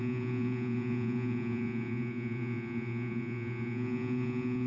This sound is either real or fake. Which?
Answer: fake